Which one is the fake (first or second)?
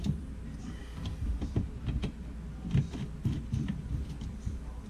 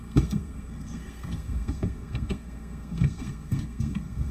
second